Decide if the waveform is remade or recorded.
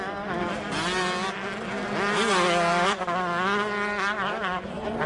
recorded